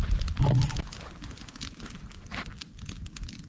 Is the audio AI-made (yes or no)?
no